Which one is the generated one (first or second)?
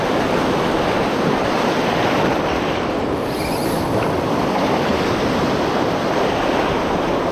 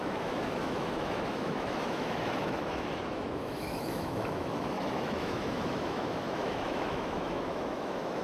second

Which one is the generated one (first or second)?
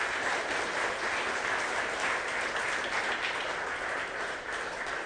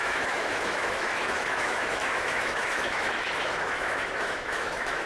second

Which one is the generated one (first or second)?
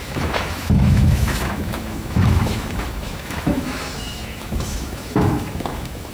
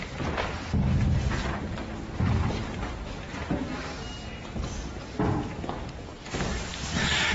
first